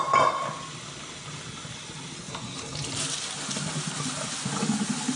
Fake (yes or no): no